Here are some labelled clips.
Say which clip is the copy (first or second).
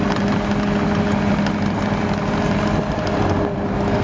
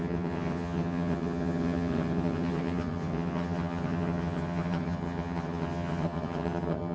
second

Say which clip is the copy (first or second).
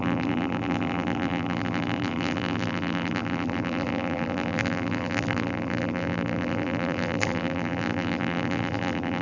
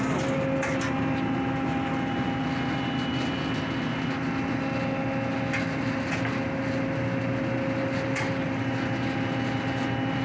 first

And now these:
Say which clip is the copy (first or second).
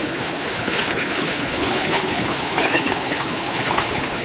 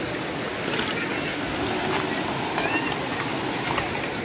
first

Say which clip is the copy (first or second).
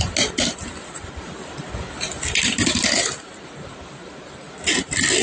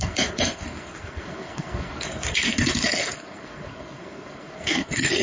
second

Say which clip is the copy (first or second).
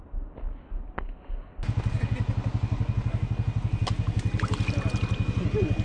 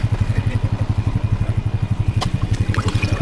second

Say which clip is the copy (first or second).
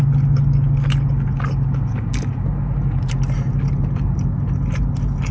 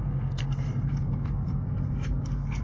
second